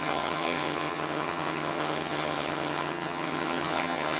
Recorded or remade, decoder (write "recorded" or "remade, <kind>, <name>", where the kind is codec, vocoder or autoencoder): remade, vocoder, HiFi-GAN